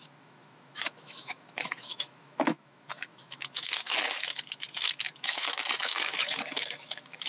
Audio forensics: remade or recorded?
remade